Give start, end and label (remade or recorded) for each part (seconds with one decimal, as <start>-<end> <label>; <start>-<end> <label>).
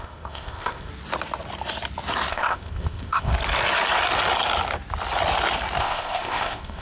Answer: 0.0-0.9 remade; 0.9-2.3 recorded; 2.3-3.3 remade; 3.3-5.8 recorded; 5.8-6.8 remade